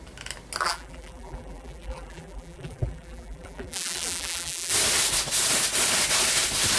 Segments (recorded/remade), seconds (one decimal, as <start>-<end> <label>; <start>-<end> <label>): 0.0-0.6 recorded; 0.6-4.7 remade; 4.7-6.8 recorded